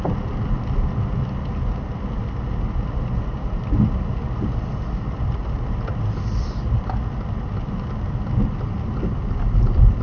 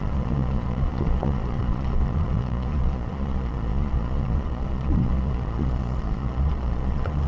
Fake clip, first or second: second